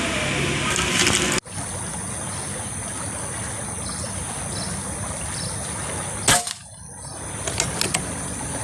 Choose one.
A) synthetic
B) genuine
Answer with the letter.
B